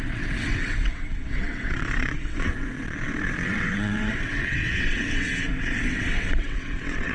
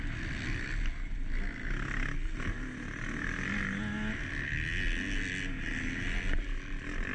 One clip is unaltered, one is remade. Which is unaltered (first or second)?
second